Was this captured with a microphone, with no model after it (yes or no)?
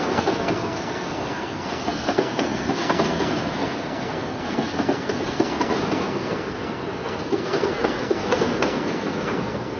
no